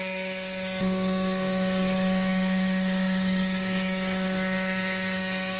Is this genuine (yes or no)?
no